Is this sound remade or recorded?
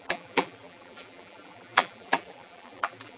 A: remade